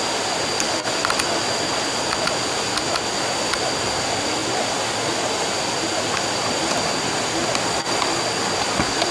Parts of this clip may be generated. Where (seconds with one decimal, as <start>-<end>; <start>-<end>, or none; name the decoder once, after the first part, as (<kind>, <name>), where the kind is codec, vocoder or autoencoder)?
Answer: none